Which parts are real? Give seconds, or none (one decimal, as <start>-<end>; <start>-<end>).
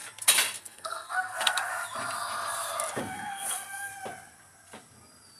0.0-0.6; 1.7-3.0; 3.9-5.4